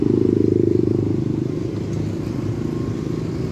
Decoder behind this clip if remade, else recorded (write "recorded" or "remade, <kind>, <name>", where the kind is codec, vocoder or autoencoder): recorded